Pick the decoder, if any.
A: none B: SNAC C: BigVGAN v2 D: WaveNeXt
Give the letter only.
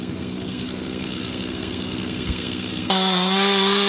B